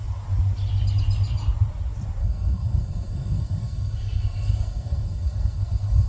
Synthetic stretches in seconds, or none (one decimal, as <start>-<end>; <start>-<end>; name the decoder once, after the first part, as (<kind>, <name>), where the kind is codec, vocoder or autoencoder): 2.2-6.1 (codec, SNAC)